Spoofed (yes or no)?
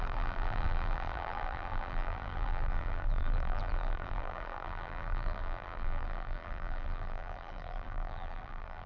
yes